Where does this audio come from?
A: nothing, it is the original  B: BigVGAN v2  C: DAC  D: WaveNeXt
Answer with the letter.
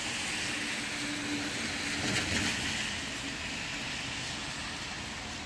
A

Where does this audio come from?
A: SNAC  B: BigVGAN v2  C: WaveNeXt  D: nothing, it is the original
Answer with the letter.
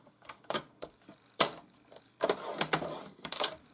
B